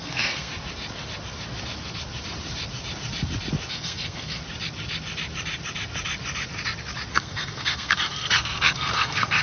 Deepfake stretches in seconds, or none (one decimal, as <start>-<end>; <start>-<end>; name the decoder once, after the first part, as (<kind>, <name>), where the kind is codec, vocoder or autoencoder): 0.0-0.5 (codec, SNAC); 3.7-4.4; 7.1-9.4